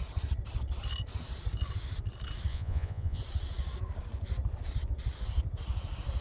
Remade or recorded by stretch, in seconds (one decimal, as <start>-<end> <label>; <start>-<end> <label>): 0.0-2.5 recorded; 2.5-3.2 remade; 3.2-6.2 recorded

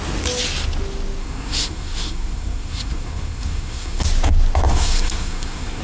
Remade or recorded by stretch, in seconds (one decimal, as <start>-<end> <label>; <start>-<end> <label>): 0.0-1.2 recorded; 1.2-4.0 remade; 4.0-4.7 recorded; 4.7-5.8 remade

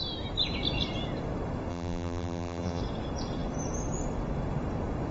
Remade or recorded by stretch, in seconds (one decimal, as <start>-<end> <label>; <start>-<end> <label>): 0.0-1.7 recorded; 1.7-2.8 remade; 2.8-5.1 recorded